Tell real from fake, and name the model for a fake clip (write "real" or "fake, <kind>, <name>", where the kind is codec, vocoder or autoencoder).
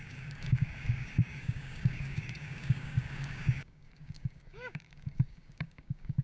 fake, codec, DAC